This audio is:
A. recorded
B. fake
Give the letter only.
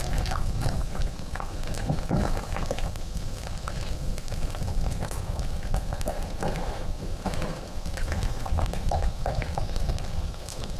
B